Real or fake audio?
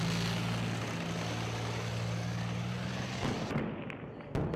real